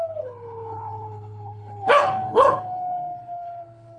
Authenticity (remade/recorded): remade